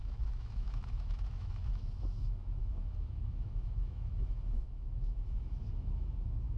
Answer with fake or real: fake